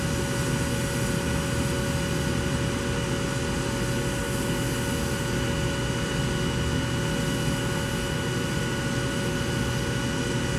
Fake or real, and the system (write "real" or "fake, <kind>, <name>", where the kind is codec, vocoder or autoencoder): real